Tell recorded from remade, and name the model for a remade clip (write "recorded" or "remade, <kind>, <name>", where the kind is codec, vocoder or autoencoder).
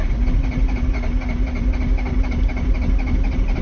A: recorded